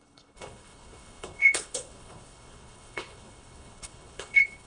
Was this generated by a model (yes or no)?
yes